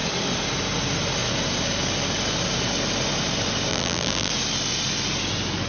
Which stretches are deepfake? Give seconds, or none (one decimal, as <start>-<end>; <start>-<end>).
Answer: 3.7-4.3